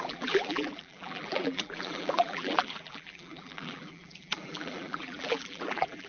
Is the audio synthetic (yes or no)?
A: yes